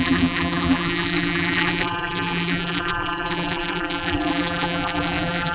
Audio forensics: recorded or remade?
remade